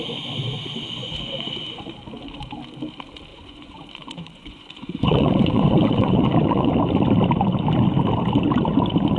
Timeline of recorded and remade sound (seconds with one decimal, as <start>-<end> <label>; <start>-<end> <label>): 0.0-1.0 recorded; 1.0-1.9 remade; 1.9-3.3 recorded; 3.3-6.7 remade; 6.7-9.2 recorded